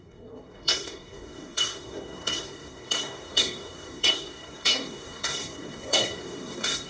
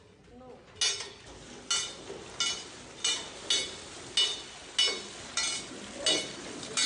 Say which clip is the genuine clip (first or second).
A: second